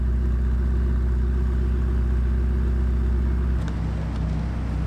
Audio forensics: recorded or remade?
recorded